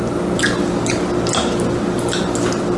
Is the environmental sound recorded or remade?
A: recorded